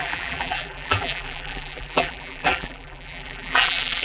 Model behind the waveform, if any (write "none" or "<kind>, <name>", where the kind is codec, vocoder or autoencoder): vocoder, BigVGAN v2